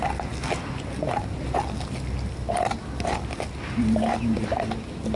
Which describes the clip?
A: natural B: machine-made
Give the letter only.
A